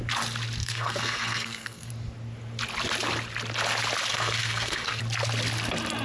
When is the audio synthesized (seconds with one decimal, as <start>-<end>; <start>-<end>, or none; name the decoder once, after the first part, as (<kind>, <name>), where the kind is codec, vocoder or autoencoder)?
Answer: 0.6-1.9 (codec, SNAC); 4.1-5.0